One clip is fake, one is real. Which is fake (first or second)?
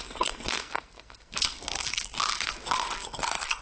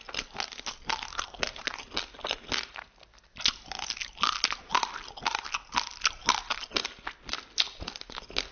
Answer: first